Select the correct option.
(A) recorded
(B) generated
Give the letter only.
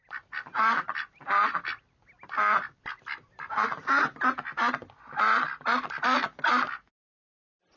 A